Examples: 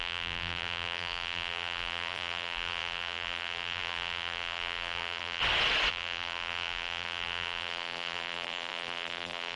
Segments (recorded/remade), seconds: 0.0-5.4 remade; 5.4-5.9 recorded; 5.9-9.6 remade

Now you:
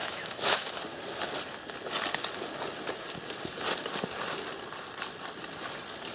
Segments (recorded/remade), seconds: 0.0-0.7 remade; 0.7-6.1 recorded

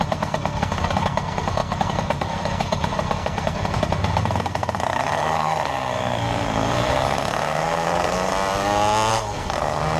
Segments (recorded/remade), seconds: 0.0-8.3 remade; 8.3-9.1 recorded; 9.1-10.0 remade

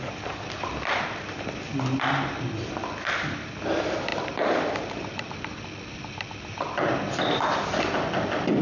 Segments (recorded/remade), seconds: 0.0-8.6 recorded